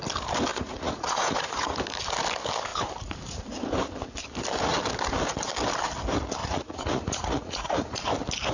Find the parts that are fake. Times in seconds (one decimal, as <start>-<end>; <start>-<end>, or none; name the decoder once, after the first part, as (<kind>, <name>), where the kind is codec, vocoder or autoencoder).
0.5-1.8 (vocoder, Vocos); 6.4-8.0